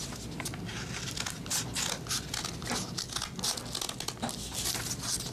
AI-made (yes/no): no